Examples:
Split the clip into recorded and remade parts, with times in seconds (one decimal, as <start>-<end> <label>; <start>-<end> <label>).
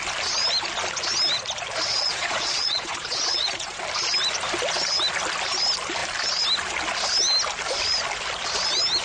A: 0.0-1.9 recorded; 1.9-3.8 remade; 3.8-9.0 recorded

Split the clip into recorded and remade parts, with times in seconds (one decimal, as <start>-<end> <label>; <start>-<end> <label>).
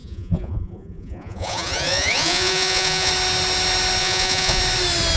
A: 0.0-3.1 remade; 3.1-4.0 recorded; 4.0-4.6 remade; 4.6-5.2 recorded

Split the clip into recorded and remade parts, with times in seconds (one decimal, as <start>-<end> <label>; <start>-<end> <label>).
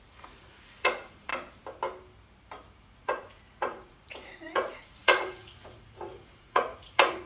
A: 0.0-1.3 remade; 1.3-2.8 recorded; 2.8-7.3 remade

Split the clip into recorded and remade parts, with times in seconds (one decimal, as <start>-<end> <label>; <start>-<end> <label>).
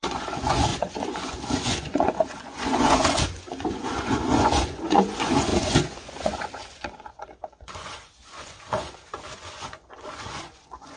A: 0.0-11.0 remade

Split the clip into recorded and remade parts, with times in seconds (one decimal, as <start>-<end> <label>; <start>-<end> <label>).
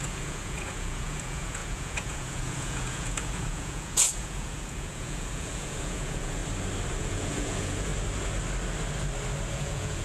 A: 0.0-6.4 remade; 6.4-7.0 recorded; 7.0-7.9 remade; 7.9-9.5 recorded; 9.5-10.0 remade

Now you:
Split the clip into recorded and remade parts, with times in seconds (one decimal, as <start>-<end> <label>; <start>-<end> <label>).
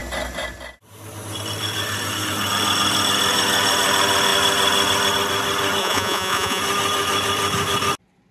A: 0.0-5.8 recorded; 5.8-6.6 remade; 6.6-8.3 recorded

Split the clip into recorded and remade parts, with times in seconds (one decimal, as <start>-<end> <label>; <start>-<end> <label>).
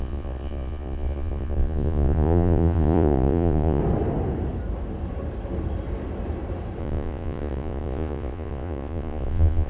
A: 0.0-3.8 remade; 3.8-6.8 recorded; 6.8-9.7 remade